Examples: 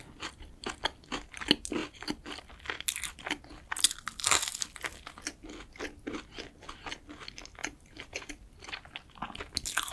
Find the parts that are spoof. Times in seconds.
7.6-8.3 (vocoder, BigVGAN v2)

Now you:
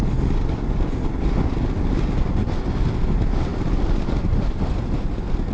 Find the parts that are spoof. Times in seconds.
3.5-4.6 (vocoder, BigVGAN v2)

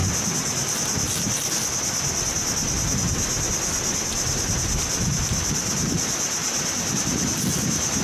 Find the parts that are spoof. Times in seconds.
6.4-6.9 (vocoder, BigVGAN v2)

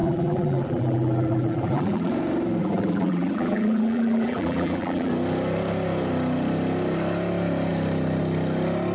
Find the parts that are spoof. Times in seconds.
0.0-2.1 (vocoder, BigVGAN v2); 2.6-5.1

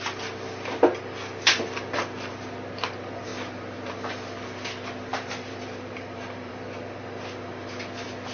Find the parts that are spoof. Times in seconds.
5.1-6.5 (vocoder, BigVGAN v2)

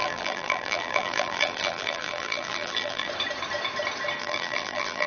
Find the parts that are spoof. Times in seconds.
0.0-3.1 (vocoder, BigVGAN v2); 4.2-5.1

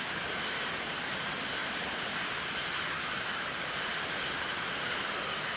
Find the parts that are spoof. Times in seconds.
1.6-5.0 (vocoder, BigVGAN v2)

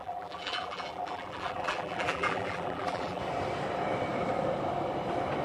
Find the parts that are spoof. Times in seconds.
0.0-3.2 (vocoder, BigVGAN v2)